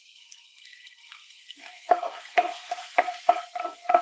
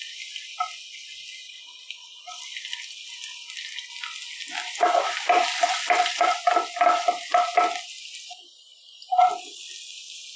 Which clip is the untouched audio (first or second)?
second